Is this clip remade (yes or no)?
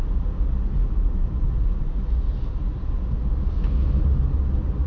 no